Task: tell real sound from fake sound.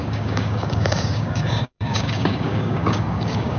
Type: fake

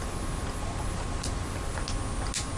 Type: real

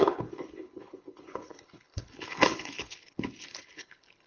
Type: fake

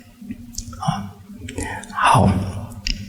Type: real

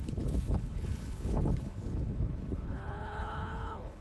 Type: fake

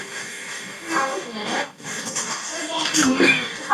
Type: fake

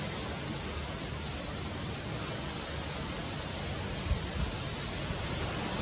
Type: real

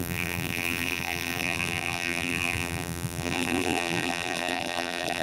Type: fake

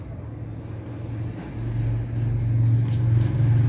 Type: real